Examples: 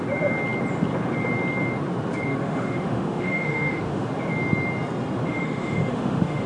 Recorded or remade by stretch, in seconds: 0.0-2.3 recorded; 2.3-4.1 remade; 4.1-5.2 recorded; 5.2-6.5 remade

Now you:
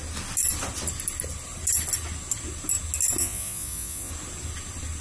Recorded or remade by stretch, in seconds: 0.0-3.2 recorded; 3.2-4.1 remade; 4.1-5.0 recorded

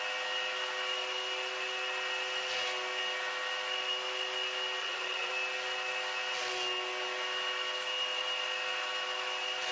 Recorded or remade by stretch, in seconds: 0.0-4.8 recorded; 4.8-5.3 remade; 5.3-9.7 recorded